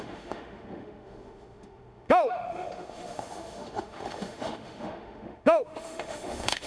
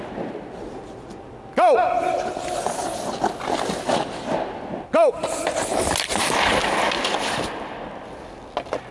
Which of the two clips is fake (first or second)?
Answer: first